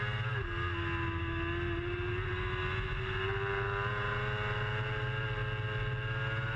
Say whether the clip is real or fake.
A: real